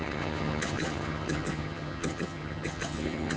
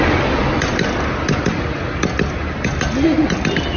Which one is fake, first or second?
first